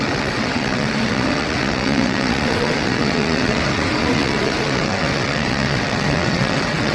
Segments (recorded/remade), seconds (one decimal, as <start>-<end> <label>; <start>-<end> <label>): 0.0-6.9 remade